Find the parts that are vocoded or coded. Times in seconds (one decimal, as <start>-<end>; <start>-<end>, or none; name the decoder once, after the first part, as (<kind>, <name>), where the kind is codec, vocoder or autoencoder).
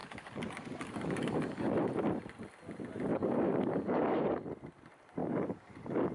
0.0-1.7 (codec, DAC); 3.1-4.4; 5.2-6.1